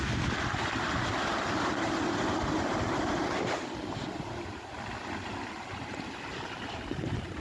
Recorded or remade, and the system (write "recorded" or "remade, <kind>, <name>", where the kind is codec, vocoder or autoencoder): recorded